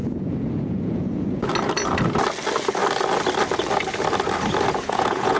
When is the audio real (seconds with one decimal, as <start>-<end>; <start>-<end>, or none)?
1.5-4.7